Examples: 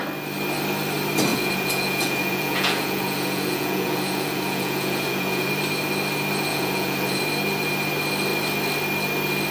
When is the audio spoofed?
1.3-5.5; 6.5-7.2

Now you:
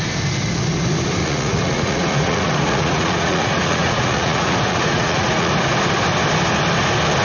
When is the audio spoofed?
1.2-5.5

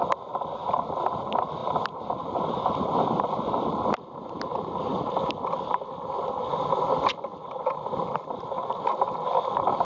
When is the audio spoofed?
none

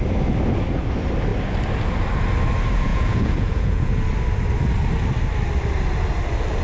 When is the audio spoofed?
2.9-3.9

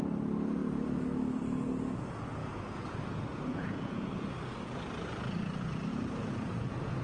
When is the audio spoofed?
2.4-3.0; 3.5-4.1; 5.9-7.0

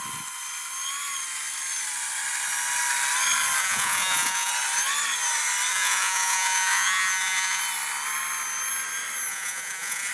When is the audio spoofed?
3.6-4.5; 5.7-7.6; 9.3-10.1